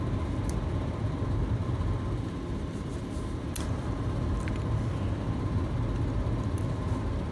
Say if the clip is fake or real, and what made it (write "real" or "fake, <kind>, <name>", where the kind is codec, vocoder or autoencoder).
real